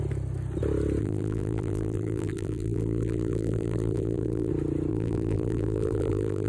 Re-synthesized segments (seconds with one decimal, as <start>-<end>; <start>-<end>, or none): 1.0-4.5; 4.9-6.5